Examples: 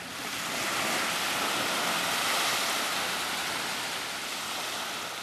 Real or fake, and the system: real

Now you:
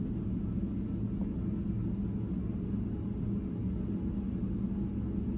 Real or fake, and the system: real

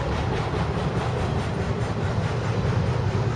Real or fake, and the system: real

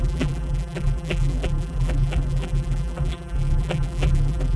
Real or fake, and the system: fake, vocoder, BigVGAN v2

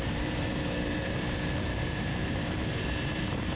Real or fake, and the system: fake, vocoder, BigVGAN v2